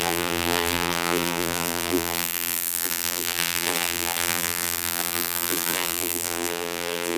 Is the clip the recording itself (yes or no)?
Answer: no